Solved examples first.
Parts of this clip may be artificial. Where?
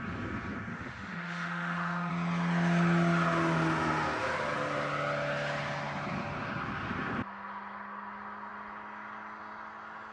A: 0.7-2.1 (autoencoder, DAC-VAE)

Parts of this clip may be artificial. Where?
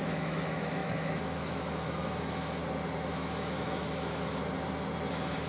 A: 0.0-2.6 (autoencoder, DAC-VAE); 3.1-4.4; 5.1-5.5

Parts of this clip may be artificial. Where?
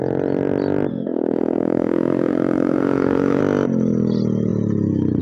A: 0.9-3.4 (autoencoder, DAC-VAE)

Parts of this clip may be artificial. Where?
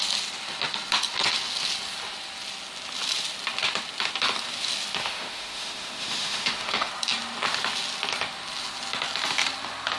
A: 5.0-6.9 (autoencoder, DAC-VAE)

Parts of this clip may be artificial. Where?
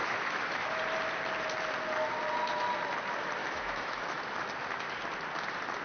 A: 0.0-0.8 (autoencoder, DAC-VAE); 3.4-4.2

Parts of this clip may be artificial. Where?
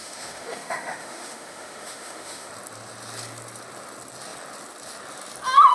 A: 0.0-2.5 (autoencoder, DAC-VAE)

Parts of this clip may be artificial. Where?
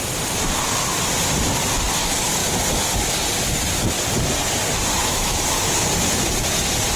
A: 5.0-5.7 (autoencoder, DAC-VAE)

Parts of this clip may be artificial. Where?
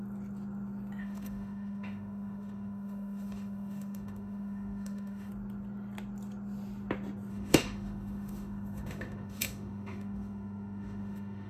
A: 1.0-5.3 (autoencoder, DAC-VAE); 7.3-11.5